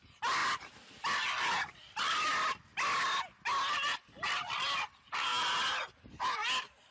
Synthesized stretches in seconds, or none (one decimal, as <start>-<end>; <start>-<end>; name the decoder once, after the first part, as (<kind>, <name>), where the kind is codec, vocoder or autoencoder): none